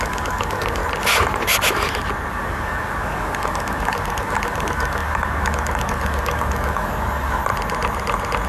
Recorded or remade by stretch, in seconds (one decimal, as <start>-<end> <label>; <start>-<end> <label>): 0.0-0.8 remade; 0.8-2.3 recorded; 2.3-7.4 remade; 7.4-8.5 recorded